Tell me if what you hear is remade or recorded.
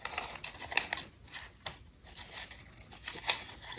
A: recorded